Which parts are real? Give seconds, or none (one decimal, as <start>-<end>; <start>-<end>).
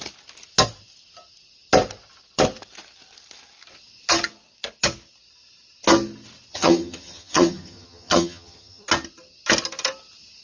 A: 0.0-6.5; 8.8-10.4